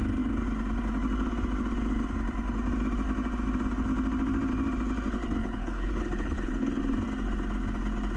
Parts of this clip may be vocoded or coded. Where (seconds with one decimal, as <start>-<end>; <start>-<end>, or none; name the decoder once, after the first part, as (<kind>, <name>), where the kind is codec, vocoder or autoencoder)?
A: 5.4-6.8 (codec, HILCodec)